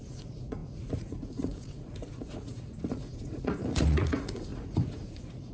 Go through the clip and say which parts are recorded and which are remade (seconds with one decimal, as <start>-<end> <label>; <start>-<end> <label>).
0.0-5.5 remade